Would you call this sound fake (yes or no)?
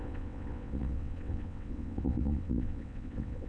yes